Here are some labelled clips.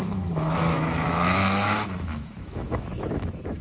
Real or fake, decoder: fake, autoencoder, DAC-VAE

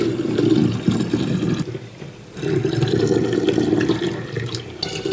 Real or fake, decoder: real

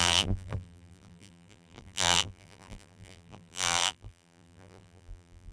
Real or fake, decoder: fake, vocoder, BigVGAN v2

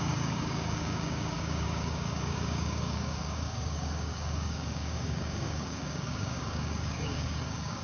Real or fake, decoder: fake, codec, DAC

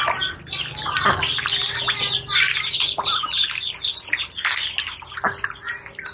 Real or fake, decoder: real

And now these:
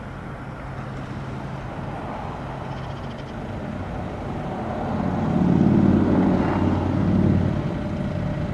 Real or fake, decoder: real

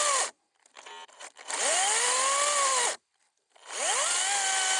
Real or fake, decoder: real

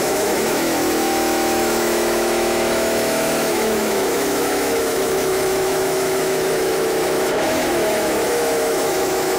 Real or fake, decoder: fake, autoencoder, DAC-VAE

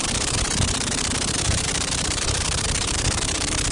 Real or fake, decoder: fake, vocoder, BigVGAN v2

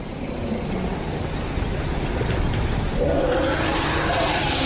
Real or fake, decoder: real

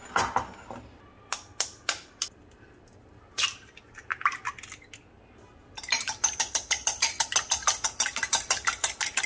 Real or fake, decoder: real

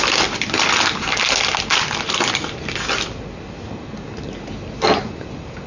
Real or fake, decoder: real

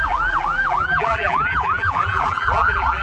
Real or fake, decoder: fake, vocoder, BigVGAN v2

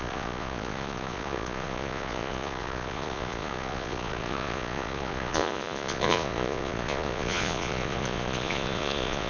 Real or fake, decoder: fake, vocoder, Vocos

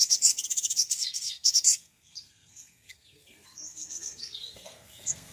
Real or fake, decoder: fake, codec, SNAC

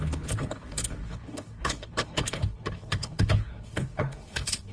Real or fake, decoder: fake, codec, HILCodec